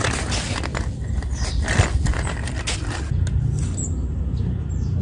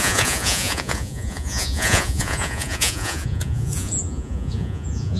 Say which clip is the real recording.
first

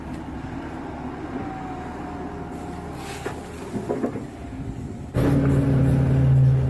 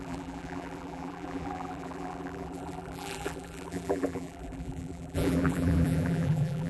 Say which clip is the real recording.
first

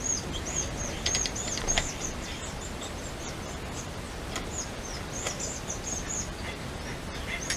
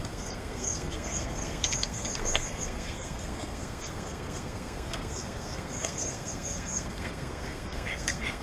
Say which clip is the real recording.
first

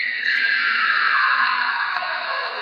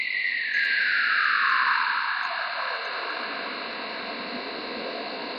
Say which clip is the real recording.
second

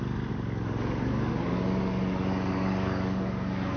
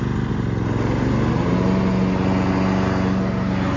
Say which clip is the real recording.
second